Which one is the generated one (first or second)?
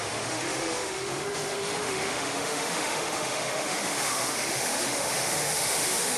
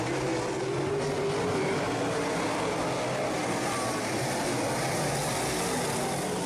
first